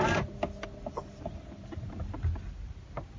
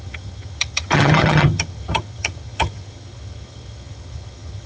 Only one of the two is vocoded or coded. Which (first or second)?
second